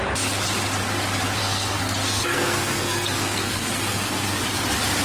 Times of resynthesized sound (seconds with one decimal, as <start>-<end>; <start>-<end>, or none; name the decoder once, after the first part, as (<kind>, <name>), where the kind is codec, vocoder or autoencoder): 1.4-4.4 (codec, SNAC)

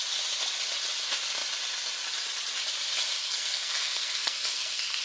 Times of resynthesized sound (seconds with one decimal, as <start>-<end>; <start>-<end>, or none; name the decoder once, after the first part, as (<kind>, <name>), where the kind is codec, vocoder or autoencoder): 3.2-5.0 (codec, SNAC)

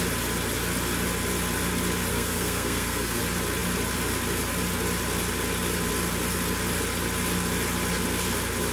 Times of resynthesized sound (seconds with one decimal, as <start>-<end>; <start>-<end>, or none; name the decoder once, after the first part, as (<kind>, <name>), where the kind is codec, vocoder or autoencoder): 2.1-3.2 (codec, SNAC)

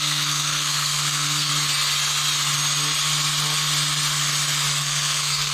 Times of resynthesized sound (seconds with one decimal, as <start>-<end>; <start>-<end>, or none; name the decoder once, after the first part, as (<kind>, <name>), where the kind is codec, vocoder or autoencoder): 0.0-1.5 (codec, SNAC); 4.8-5.5

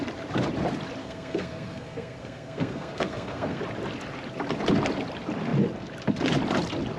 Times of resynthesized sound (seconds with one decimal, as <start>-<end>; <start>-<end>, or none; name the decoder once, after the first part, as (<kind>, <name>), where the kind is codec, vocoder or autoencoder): 1.0-3.6 (codec, SNAC)

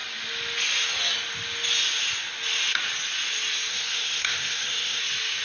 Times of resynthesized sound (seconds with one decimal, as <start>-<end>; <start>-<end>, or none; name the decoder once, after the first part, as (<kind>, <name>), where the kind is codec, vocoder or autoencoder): 3.7-5.0 (codec, SNAC)

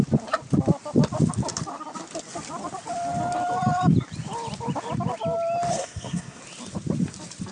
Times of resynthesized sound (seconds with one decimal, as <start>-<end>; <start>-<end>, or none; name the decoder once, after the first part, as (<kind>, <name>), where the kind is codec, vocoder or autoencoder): 5.7-6.4 (codec, SNAC)

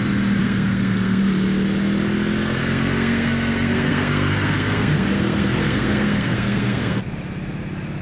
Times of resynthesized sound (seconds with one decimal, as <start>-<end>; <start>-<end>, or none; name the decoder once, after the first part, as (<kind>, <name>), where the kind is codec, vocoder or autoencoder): 0.4-1.2 (codec, SNAC); 2.6-7.0